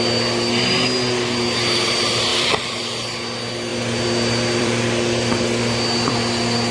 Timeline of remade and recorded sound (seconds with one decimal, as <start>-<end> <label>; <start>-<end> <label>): 0.0-2.3 recorded; 2.3-3.0 remade; 3.0-3.7 recorded; 3.7-6.7 remade